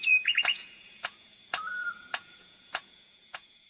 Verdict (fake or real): fake